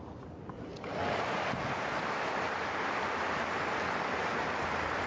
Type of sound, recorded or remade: remade